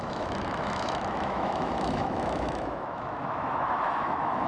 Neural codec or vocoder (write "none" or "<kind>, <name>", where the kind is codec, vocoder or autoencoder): autoencoder, DAC-VAE